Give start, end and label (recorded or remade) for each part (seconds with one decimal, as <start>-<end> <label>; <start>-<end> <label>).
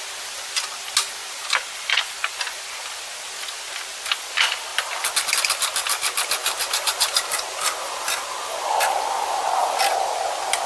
0.0-1.2 recorded; 1.2-2.5 remade; 2.5-6.4 recorded; 6.4-9.8 remade; 9.8-10.7 recorded